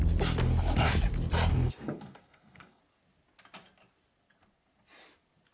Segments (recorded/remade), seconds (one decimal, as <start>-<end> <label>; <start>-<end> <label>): 0.0-1.5 recorded; 1.5-2.8 remade; 2.8-5.5 recorded